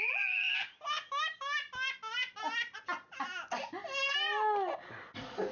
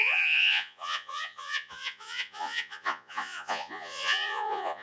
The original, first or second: first